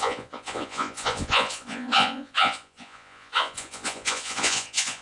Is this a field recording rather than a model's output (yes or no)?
no